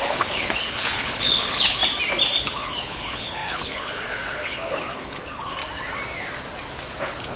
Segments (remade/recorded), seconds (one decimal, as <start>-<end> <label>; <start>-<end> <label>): 0.0-1.8 remade; 1.8-2.4 recorded; 2.4-5.6 remade; 5.6-7.0 recorded; 7.0-7.4 remade